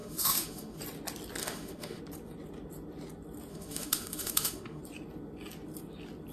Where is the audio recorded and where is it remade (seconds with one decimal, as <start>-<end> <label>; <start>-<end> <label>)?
0.0-0.8 remade; 0.8-1.4 recorded; 1.4-2.0 remade; 2.0-3.5 recorded; 3.5-4.8 remade; 4.8-6.3 recorded